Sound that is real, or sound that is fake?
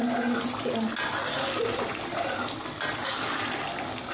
real